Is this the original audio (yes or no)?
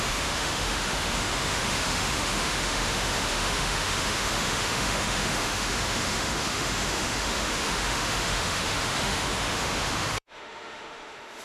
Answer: no